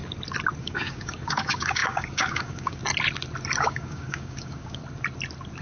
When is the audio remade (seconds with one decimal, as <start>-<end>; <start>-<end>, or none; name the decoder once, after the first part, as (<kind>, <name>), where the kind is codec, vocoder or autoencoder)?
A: 0.6-2.8 (codec, DAC); 3.6-4.8